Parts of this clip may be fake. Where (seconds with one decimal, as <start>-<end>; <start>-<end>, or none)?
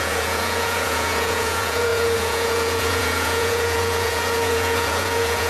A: 0.0-5.5